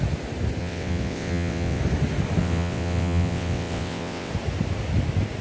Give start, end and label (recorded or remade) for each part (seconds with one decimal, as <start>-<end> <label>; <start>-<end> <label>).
0.0-0.6 recorded; 0.6-1.8 remade; 1.8-2.4 recorded; 2.4-4.3 remade; 4.3-5.4 recorded